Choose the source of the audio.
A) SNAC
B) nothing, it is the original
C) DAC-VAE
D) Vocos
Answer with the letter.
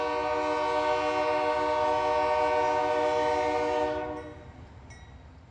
B